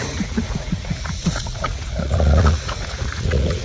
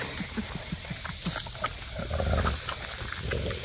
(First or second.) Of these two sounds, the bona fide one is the second